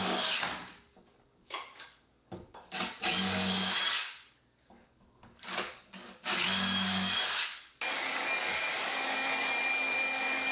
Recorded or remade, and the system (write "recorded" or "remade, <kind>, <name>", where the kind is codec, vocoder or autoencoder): remade, codec, DAC